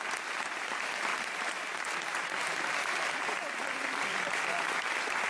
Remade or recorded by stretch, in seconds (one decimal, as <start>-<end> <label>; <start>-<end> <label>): 0.0-5.3 recorded